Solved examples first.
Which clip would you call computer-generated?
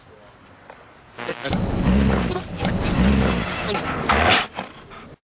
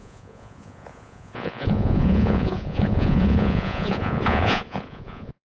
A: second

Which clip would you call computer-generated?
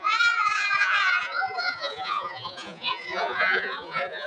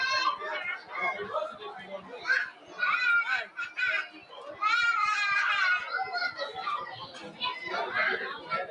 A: first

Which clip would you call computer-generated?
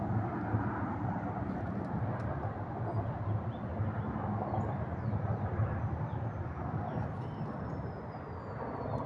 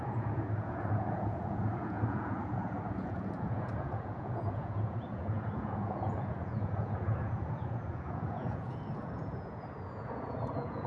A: second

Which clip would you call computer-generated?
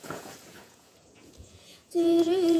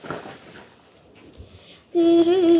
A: first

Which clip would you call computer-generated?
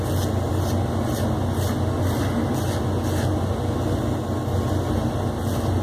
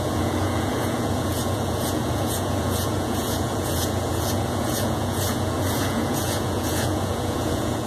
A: second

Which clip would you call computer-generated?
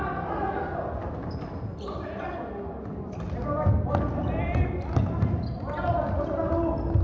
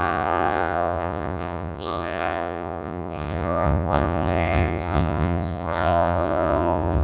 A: second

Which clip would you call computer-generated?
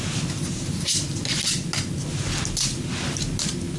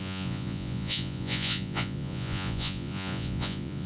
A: second